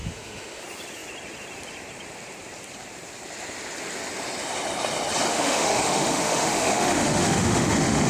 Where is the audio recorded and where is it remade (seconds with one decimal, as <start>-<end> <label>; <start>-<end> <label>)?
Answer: 0.0-0.6 remade; 0.6-5.3 recorded; 5.3-8.1 remade

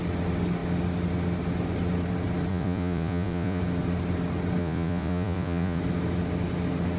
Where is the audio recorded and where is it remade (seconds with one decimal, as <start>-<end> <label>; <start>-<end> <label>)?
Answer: 0.0-2.5 recorded; 2.5-3.6 remade; 3.6-4.6 recorded; 4.6-5.8 remade; 5.8-7.0 recorded